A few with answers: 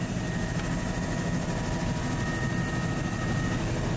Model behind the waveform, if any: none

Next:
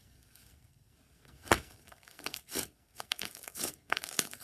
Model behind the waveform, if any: codec, SNAC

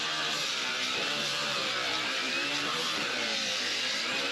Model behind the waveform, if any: vocoder, BigVGAN v2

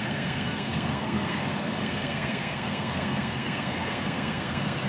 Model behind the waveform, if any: codec, SNAC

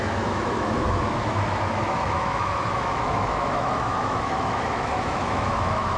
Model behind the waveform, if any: autoencoder, DAC-VAE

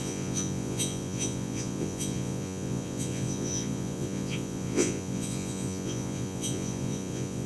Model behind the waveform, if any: vocoder, Vocos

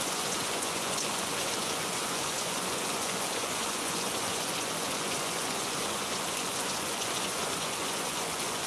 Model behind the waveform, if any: vocoder, Vocos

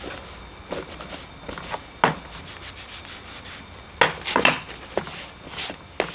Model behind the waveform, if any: none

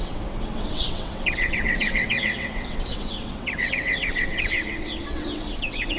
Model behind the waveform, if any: vocoder, WaveNeXt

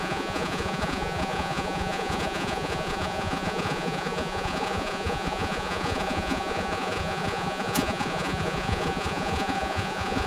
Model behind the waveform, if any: vocoder, Vocos